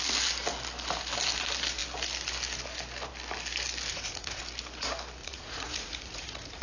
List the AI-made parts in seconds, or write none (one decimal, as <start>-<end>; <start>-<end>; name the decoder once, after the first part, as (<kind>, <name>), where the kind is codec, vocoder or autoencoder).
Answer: 3.9-4.4 (vocoder, Vocos); 5.2-6.6